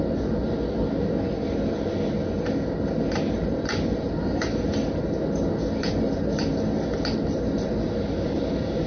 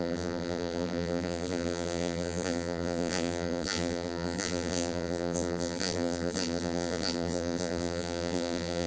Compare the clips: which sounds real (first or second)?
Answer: first